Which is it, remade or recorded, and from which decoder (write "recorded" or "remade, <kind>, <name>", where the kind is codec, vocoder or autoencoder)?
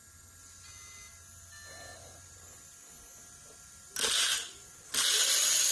recorded